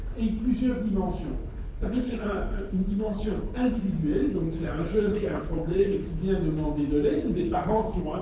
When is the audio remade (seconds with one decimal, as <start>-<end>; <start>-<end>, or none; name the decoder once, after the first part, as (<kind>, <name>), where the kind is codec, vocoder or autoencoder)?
1.4-3.8 (codec, HILCodec); 4.3-6.2; 7.1-8.2